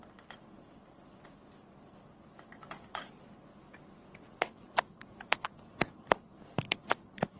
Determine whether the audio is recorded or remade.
recorded